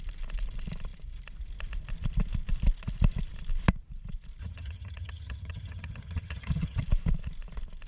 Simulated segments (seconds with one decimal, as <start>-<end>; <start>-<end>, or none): 4.4-6.8